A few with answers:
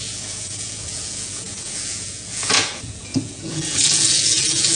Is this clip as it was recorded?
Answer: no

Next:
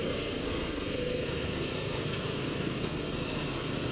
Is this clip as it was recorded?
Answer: no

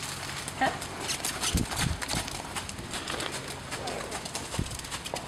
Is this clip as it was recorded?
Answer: yes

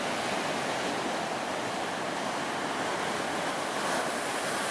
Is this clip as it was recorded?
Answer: yes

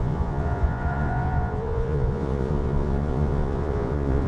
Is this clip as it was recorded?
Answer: no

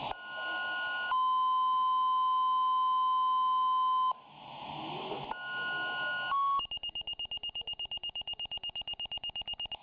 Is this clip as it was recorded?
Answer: yes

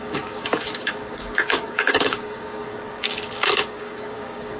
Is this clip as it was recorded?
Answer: no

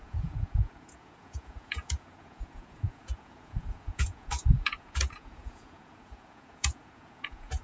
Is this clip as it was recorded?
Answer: no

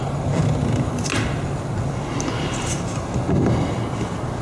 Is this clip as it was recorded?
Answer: yes